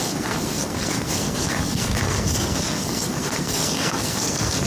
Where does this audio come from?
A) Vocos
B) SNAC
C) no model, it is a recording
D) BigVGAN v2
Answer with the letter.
B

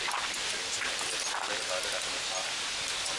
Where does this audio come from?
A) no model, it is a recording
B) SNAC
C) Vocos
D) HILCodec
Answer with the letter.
A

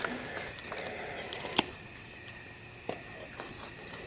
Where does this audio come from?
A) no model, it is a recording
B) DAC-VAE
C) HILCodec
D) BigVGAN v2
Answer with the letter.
A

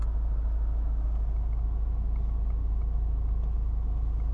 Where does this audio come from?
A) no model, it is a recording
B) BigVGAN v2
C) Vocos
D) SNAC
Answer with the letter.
A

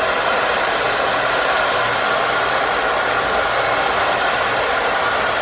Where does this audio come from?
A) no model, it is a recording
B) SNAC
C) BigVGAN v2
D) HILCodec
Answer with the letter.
A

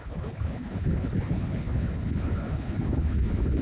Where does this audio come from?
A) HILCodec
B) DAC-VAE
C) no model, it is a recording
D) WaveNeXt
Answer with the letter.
A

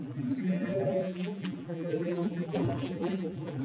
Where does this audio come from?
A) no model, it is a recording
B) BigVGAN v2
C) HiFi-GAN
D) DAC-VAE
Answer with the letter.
B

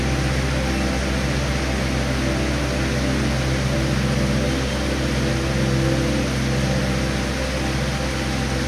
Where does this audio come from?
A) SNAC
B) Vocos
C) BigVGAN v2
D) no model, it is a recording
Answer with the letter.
D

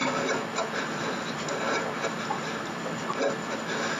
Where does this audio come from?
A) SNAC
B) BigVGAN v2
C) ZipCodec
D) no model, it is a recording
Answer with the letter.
D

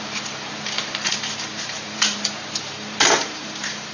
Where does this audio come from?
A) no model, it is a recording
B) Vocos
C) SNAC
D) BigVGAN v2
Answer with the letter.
D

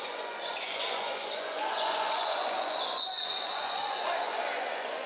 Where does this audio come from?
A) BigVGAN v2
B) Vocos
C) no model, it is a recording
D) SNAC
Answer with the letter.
B